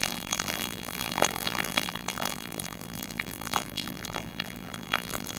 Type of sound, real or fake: fake